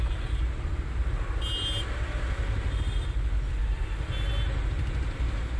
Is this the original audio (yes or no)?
yes